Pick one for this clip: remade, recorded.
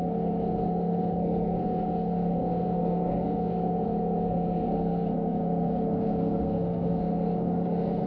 remade